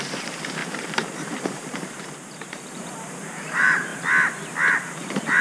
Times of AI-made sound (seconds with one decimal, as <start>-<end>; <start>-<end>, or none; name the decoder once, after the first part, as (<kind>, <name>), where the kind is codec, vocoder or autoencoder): 0.0-3.9 (vocoder, BigVGAN v2); 4.7-5.4

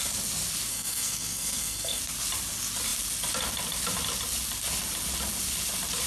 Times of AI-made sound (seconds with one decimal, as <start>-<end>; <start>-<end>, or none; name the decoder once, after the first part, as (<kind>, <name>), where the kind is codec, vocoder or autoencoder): 0.7-2.0 (codec, SNAC)